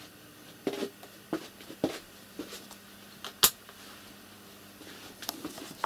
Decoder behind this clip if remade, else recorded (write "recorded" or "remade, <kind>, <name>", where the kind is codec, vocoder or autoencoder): recorded